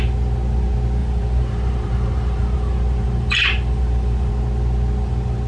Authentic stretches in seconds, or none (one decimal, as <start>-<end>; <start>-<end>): 0.0-1.0; 4.3-5.5

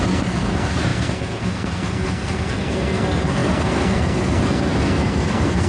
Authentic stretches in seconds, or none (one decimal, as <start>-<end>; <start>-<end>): none

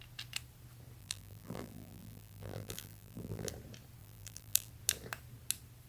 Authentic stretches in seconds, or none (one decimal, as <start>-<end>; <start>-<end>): 0.0-1.0; 3.5-4.0; 4.7-5.9

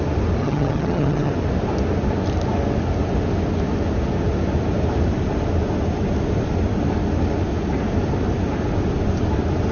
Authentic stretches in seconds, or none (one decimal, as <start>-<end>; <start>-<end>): 0.0-0.4; 1.3-9.7